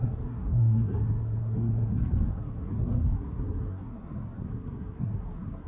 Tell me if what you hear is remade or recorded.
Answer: remade